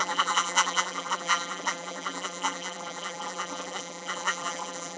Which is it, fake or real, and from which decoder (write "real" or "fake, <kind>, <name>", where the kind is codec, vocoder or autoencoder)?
fake, vocoder, BigVGAN v2